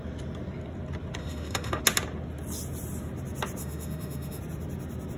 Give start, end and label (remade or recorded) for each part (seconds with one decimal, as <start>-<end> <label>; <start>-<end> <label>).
0.0-1.2 recorded; 1.2-1.8 remade; 1.8-3.6 recorded; 3.6-4.4 remade; 4.4-5.2 recorded